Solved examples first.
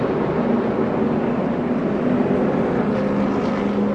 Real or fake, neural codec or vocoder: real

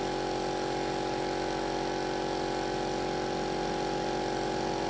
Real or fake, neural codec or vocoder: real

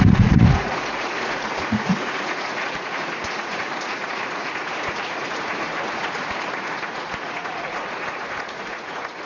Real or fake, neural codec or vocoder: fake, vocoder, Vocos